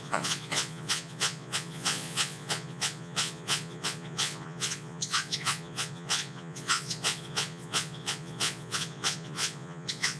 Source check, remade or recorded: remade